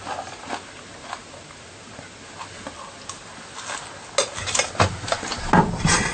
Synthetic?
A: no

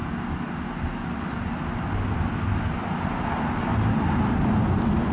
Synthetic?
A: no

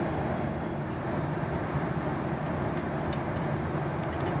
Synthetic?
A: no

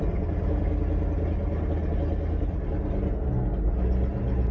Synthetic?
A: no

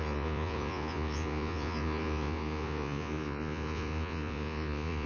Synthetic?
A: yes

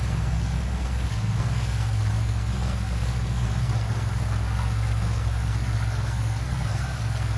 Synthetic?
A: yes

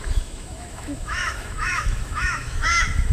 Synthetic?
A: yes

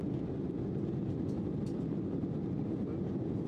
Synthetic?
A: no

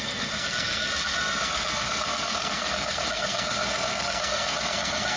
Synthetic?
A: yes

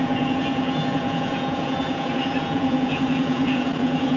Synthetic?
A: yes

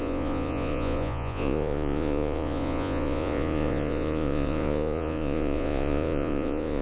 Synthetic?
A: yes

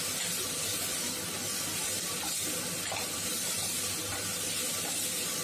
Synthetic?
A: no